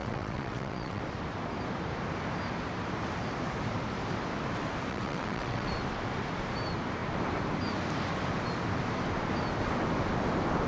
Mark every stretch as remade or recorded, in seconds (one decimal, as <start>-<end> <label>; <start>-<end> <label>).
0.0-1.0 remade; 1.0-4.9 recorded; 4.9-5.7 remade; 5.7-10.7 recorded